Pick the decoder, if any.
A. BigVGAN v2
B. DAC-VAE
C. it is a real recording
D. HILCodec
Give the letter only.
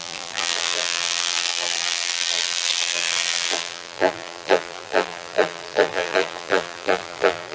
A